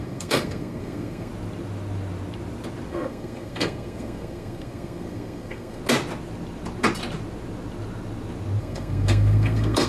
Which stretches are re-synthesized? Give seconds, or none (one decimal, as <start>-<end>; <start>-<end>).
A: 0.0-1.3; 2.9-5.8; 8.6-9.9